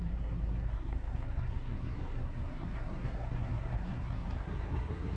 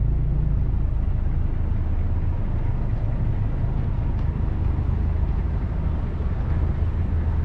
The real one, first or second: second